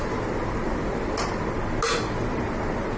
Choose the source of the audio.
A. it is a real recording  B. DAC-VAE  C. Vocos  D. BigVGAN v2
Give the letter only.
A